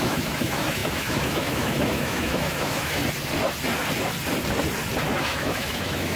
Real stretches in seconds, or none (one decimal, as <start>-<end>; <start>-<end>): 3.0-5.2

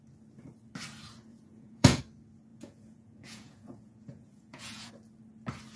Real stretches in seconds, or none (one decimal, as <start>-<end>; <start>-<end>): 0.0-1.3; 2.0-2.5; 4.9-5.8